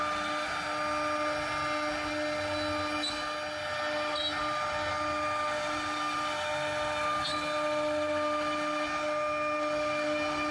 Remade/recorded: recorded